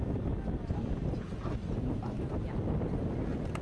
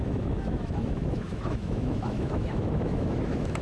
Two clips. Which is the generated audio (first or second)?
second